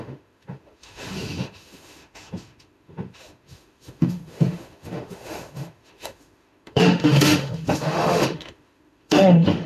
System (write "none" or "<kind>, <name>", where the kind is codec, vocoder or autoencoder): autoencoder, DAC-VAE